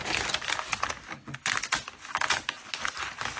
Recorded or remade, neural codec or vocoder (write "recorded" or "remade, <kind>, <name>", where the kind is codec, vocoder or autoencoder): recorded